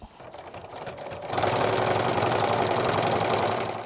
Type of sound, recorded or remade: recorded